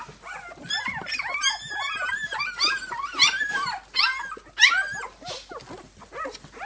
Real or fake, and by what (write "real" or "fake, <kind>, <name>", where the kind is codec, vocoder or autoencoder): real